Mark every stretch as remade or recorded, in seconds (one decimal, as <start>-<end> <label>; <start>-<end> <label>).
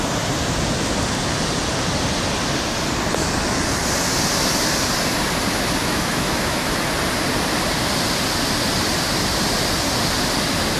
0.0-5.8 recorded; 5.8-6.8 remade; 6.8-10.8 recorded